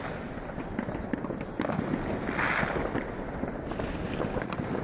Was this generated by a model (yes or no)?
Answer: no